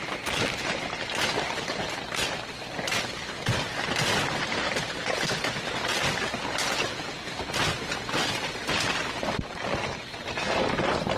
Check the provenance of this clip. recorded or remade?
recorded